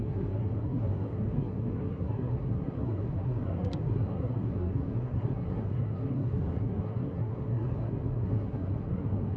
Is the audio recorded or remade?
remade